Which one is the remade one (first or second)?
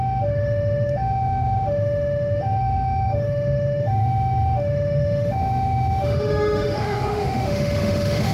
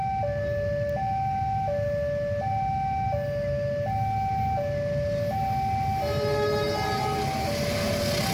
first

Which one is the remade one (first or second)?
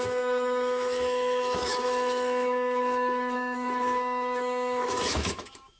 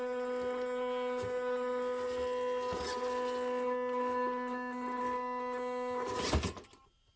first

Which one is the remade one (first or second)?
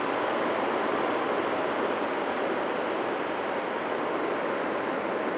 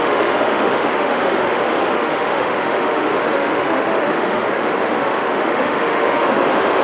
second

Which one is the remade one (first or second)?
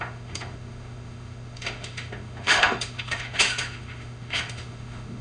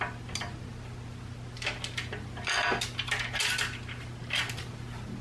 first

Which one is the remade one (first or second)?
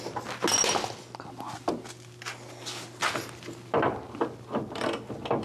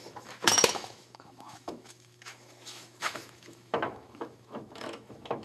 second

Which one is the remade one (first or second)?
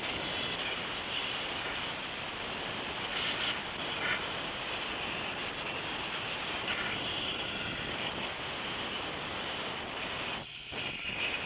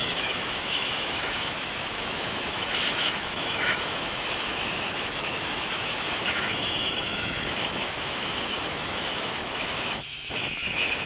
second